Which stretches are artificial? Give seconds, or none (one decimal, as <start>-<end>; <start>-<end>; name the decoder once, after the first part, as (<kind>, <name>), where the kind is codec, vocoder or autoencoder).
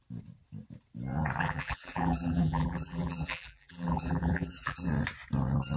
1.4-4.9 (vocoder, BigVGAN v2)